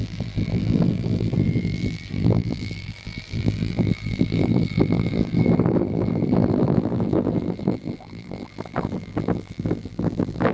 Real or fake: fake